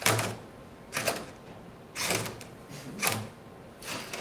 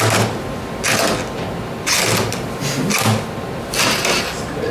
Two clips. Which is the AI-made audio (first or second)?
first